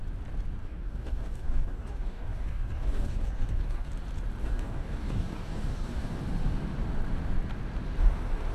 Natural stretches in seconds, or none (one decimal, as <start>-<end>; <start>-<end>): 0.0-0.6; 3.9-4.4; 6.2-8.5